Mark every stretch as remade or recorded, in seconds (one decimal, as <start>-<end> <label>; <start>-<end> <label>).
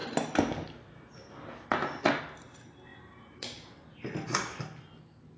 0.0-2.9 recorded; 2.9-3.7 remade; 3.7-5.4 recorded